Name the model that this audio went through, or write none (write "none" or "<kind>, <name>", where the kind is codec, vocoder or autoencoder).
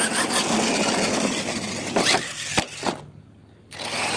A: none